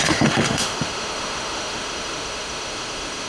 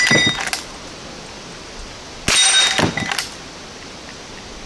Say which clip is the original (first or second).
second